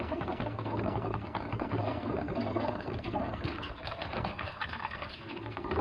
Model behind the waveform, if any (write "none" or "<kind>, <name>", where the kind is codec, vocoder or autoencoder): codec, SNAC